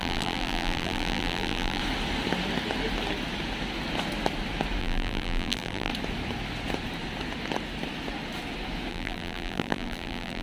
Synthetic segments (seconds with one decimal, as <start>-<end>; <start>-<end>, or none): 0.0-1.8; 4.8-5.9; 8.9-10.4